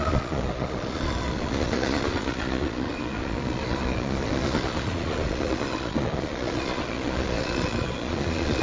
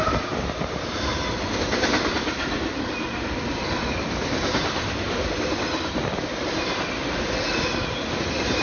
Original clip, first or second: second